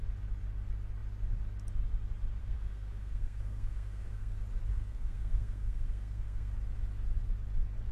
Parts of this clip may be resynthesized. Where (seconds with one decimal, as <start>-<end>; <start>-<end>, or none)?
2.4-4.3; 4.7-6.5